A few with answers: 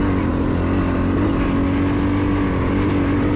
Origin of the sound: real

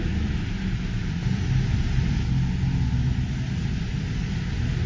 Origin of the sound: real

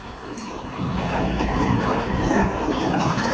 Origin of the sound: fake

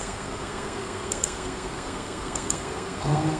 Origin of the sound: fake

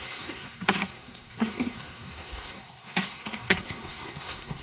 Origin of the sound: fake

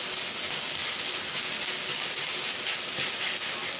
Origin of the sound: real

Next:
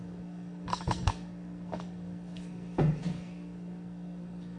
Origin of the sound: fake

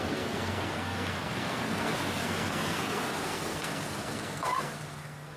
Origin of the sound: fake